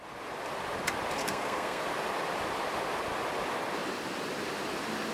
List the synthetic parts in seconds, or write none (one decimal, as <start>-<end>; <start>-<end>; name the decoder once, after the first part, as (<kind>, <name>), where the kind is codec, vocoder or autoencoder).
1.2-1.8 (codec, SNAC)